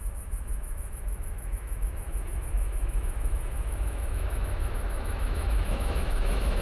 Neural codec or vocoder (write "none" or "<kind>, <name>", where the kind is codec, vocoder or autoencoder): autoencoder, DAC-VAE